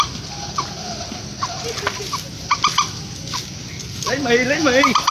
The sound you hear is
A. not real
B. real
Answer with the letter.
B